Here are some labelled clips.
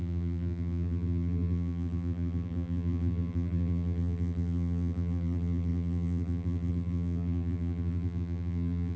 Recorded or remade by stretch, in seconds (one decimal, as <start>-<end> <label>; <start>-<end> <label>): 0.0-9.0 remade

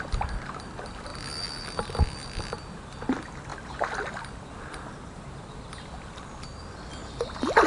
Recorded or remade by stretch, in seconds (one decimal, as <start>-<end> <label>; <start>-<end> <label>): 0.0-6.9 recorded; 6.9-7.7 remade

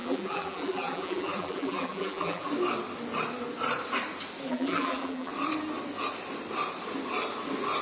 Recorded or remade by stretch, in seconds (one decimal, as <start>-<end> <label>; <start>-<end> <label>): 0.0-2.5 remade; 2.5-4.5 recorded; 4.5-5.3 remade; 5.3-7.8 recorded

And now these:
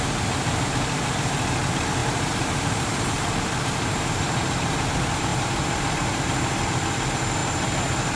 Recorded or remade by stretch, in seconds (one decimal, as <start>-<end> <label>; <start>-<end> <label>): 0.0-2.0 recorded; 2.0-4.0 remade; 4.0-5.3 recorded; 5.3-6.8 remade; 6.8-7.4 recorded; 7.4-8.2 remade

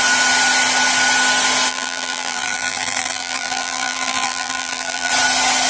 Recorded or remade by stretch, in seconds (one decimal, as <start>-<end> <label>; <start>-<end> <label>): 0.0-1.7 recorded; 1.7-5.1 remade; 5.1-5.7 recorded

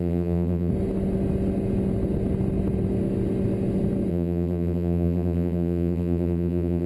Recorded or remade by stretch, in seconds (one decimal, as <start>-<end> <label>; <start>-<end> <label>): 0.0-0.7 remade; 0.7-4.1 recorded; 4.1-6.9 remade

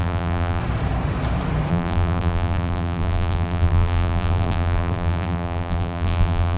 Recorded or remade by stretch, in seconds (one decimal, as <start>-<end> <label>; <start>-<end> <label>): 0.0-0.6 remade; 0.6-1.7 recorded; 1.7-6.6 remade